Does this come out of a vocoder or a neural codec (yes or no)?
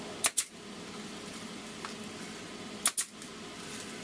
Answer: no